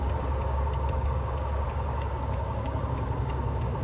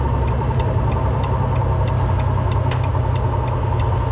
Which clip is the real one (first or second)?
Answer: second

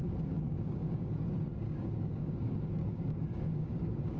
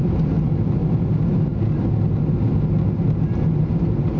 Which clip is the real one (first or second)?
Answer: second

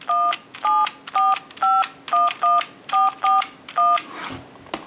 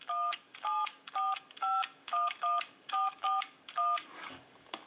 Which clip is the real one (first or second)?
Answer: first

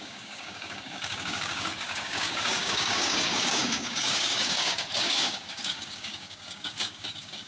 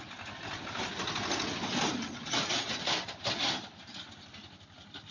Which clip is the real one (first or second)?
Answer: second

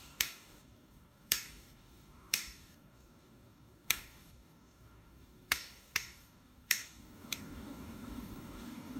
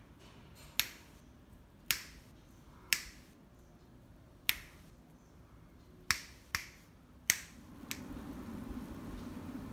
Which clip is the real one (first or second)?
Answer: second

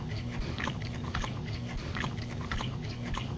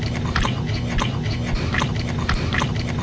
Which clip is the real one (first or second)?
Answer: second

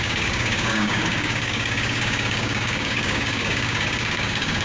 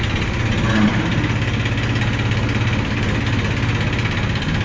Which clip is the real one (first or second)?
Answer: second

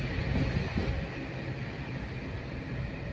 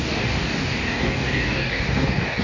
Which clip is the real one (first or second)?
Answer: first